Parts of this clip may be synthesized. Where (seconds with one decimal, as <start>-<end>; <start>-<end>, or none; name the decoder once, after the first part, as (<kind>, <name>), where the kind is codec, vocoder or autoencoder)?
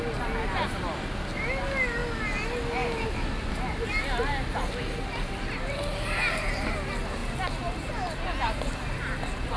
none